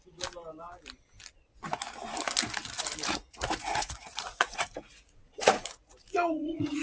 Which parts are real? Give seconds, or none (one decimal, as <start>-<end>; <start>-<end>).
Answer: 0.0-3.2